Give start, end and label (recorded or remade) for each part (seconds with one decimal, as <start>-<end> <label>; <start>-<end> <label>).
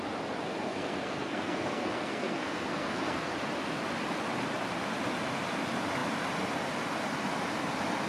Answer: 0.0-0.5 recorded; 0.5-3.3 remade; 3.3-8.1 recorded